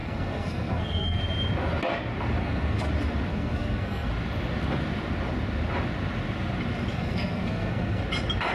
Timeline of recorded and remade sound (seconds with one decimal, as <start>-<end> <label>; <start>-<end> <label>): 0.0-1.2 remade; 1.2-2.4 recorded; 2.4-2.9 remade; 2.9-3.3 recorded; 3.3-4.1 remade; 4.1-6.9 recorded; 6.9-8.0 remade; 8.0-8.5 recorded